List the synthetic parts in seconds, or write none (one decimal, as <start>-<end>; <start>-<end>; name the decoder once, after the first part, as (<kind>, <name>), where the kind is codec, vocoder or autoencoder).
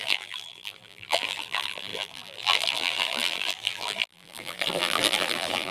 0.0-5.7 (vocoder, BigVGAN v2)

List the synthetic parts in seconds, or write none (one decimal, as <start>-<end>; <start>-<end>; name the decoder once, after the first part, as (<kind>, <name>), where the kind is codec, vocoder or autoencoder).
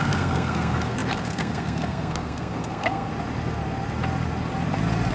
0.0-3.1 (codec, SNAC)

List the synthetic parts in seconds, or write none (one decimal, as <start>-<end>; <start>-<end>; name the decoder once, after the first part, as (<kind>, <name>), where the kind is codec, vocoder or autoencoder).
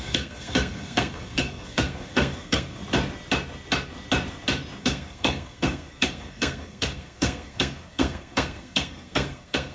0.0-2.8 (codec, SNAC); 4.8-9.7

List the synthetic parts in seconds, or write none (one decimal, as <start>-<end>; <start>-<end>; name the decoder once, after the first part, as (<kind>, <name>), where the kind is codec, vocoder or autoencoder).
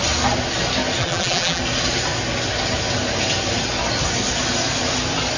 1.0-1.6 (vocoder, BigVGAN v2)